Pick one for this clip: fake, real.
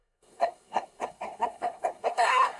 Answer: fake